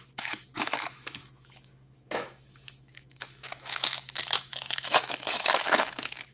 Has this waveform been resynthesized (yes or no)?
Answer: yes